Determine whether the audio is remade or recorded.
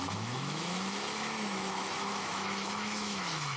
remade